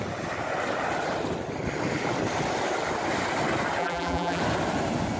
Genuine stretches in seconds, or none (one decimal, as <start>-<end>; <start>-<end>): 0.0-3.8; 4.4-5.2